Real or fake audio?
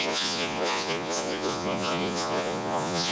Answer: fake